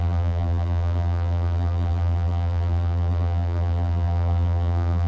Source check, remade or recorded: remade